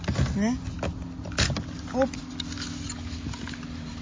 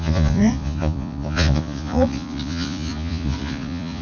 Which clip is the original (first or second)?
first